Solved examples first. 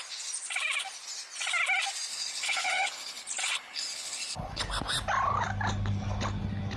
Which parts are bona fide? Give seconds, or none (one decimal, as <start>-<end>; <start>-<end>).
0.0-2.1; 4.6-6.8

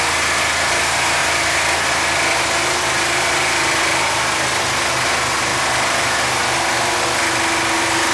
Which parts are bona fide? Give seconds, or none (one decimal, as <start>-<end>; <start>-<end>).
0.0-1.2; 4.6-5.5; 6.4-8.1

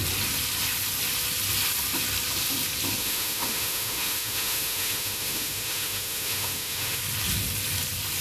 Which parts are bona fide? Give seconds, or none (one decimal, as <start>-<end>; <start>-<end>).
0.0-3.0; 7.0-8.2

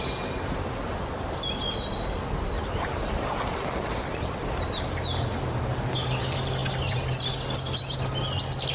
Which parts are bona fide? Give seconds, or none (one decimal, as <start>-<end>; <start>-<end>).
0.0-8.7